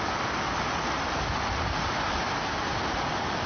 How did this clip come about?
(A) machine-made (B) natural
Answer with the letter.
B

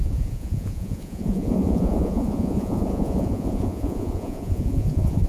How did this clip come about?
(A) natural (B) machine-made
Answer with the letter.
B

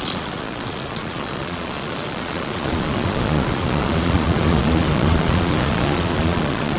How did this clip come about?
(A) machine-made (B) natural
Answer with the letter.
A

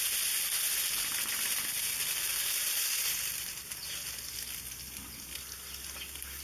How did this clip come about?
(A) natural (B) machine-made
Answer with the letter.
A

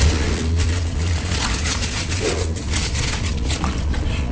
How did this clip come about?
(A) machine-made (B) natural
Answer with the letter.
A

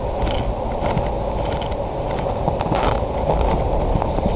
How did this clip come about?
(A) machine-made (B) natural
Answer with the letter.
B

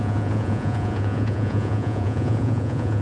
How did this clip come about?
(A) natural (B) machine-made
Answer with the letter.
B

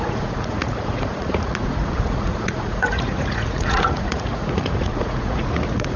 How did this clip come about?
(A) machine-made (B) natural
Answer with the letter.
A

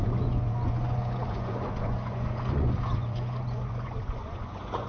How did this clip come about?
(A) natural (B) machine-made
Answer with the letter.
B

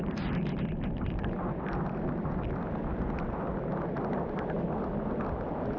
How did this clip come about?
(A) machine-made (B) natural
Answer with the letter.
B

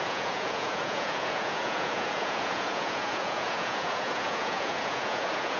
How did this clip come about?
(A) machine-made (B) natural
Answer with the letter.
A